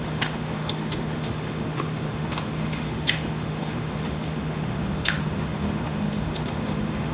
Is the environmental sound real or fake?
fake